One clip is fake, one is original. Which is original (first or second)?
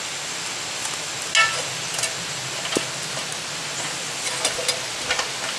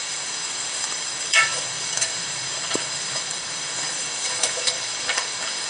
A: first